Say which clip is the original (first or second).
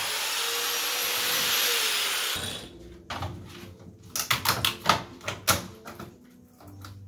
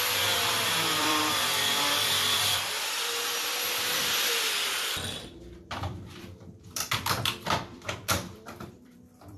first